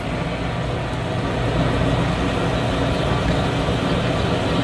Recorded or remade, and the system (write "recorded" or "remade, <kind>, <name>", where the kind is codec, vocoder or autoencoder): recorded